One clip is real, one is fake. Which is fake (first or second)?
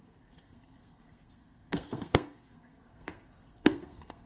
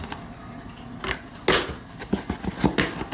first